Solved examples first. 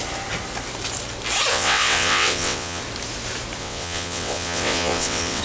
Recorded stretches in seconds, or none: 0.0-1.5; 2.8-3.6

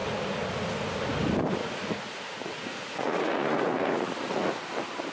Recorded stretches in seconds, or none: 0.0-1.6; 4.5-5.1

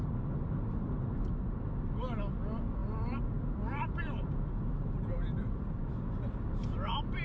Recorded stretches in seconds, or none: 0.0-7.2

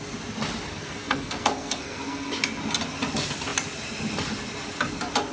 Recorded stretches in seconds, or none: 0.0-0.7; 2.3-5.3

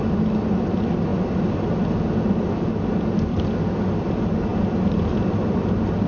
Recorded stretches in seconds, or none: 0.0-6.1

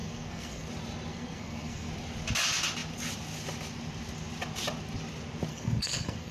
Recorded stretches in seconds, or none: 0.7-1.1; 1.9-5.5

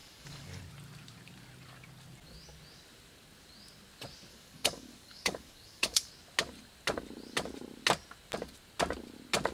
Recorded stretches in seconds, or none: 0.6-4.3; 6.1-9.5

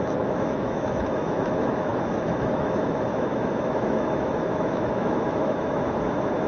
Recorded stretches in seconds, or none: none